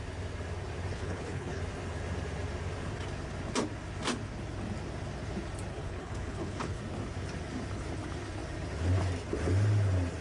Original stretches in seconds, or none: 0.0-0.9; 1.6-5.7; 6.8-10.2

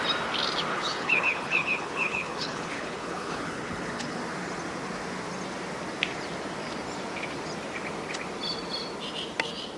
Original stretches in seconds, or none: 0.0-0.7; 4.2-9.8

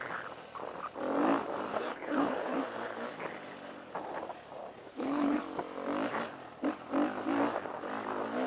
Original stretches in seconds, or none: 0.0-1.7; 2.6-4.8; 5.4-8.5

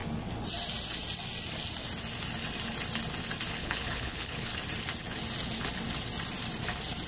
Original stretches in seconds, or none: 0.0-3.5; 4.5-7.1

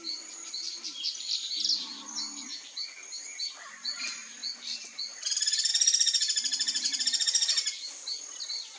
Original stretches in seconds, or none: 0.0-8.8

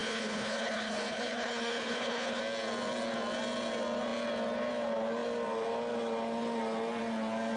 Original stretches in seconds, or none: 2.4-7.6